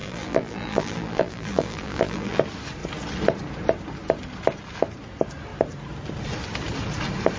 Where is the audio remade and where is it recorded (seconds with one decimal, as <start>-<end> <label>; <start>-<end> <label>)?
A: 0.0-2.4 remade; 2.4-7.4 recorded